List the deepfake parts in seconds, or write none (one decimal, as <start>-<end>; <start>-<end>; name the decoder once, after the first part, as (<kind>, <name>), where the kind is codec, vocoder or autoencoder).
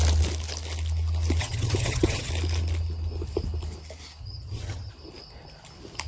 1.4-2.3 (vocoder, HiFi-GAN); 4.2-4.9